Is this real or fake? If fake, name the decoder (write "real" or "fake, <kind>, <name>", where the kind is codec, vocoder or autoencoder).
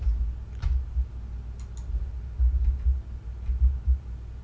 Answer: real